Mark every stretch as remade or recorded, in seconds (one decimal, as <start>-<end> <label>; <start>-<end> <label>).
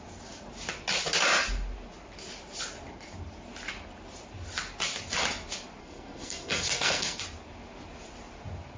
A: 0.0-5.8 recorded; 5.8-7.2 remade; 7.2-8.8 recorded